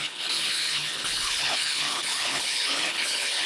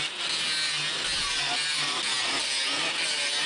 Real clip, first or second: second